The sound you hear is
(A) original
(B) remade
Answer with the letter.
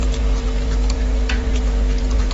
B